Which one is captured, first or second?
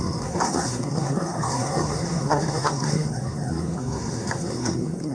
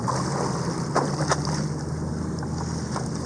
second